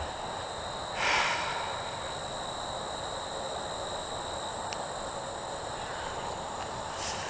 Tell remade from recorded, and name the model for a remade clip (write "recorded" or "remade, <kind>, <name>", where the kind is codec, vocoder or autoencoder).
recorded